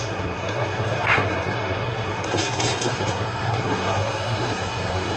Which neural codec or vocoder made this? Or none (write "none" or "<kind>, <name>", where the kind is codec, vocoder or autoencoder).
codec, SNAC